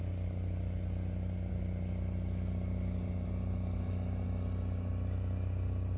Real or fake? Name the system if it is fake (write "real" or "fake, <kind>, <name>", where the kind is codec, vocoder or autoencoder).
real